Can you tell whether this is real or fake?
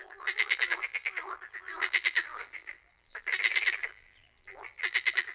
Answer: fake